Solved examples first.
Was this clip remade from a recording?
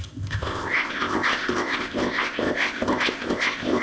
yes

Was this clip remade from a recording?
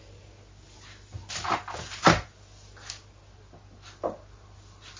no